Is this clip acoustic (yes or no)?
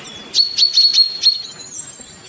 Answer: yes